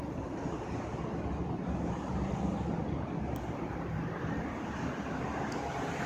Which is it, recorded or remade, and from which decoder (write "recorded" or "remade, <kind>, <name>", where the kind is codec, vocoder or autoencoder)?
recorded